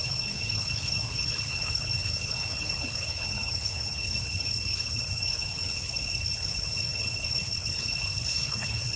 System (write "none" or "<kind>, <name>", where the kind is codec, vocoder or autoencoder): codec, HILCodec